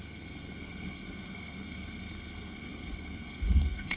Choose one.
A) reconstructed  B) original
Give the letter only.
A